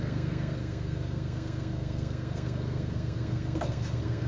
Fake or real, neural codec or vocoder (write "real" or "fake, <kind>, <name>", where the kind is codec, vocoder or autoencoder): fake, codec, SNAC